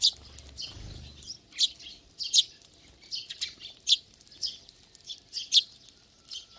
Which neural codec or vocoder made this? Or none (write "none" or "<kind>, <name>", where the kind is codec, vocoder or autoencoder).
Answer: none